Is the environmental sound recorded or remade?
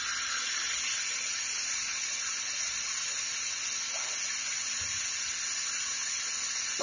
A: recorded